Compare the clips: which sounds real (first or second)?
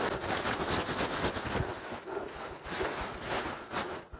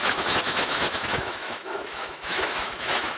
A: first